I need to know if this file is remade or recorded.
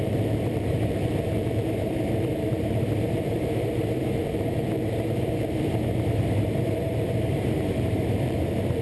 remade